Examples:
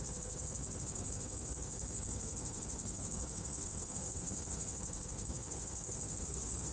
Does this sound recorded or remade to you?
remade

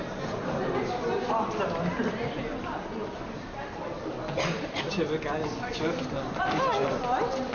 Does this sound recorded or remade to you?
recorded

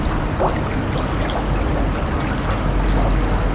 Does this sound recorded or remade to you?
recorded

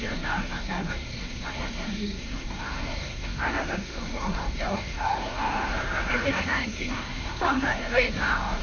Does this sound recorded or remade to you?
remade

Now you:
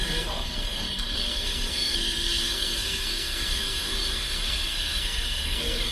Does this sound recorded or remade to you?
remade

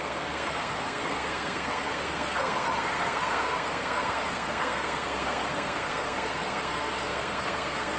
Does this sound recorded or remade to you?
remade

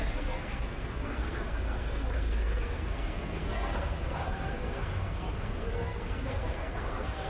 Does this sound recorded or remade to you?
remade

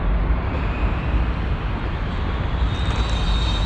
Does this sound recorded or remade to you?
recorded